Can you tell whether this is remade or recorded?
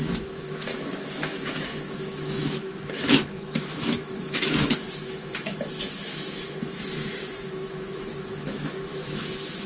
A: remade